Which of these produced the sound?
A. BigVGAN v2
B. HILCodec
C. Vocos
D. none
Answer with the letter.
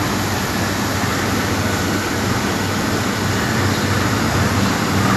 D